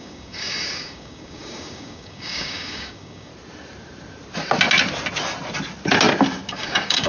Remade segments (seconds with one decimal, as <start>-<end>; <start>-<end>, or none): 0.0-3.3; 6.5-7.1